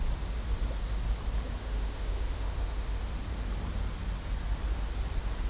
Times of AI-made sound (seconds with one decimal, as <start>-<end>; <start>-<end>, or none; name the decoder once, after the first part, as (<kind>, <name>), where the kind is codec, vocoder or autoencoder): 1.6-3.0 (autoencoder, DAC-VAE)